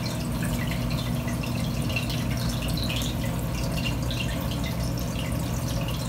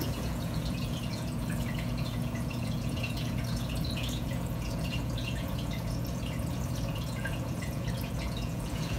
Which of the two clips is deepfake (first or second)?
second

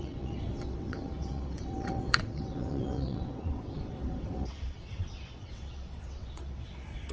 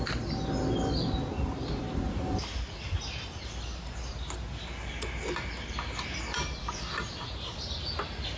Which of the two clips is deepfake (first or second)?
first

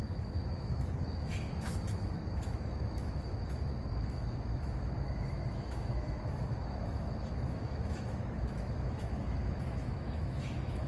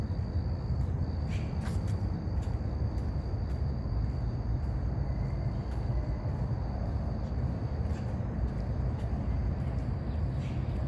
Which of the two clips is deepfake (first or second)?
first